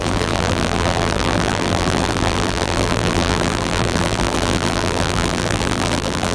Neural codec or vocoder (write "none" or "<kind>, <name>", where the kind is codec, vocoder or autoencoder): vocoder, BigVGAN v2